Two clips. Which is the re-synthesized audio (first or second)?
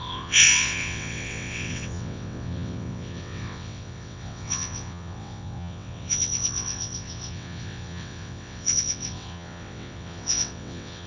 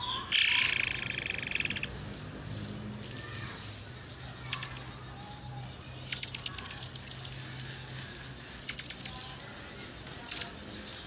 first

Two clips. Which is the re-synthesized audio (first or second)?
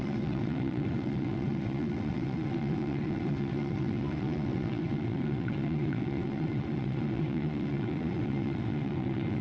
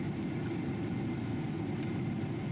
first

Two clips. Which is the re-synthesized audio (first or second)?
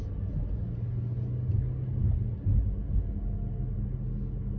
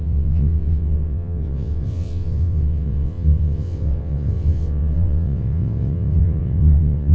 second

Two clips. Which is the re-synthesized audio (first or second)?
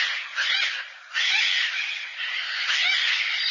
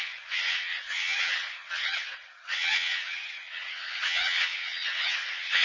second